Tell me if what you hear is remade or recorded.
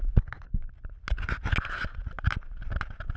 recorded